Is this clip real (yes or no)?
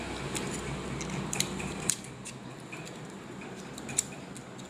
yes